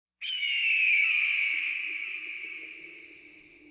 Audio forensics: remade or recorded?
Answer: recorded